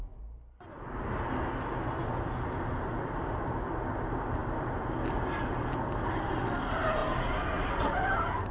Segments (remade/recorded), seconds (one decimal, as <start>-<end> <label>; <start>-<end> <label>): 0.0-8.5 recorded